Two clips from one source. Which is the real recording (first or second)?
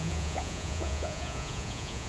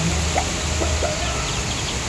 second